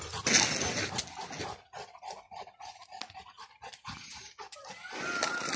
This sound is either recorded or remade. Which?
recorded